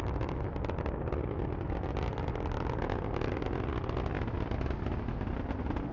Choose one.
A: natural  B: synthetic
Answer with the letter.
A